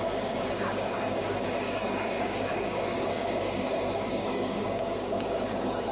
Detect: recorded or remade remade